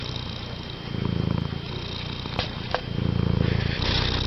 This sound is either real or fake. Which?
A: real